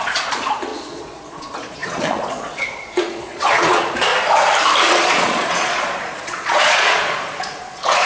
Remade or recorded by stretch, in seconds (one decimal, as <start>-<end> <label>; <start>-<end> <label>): 0.0-4.1 remade; 4.1-4.9 recorded; 4.9-8.1 remade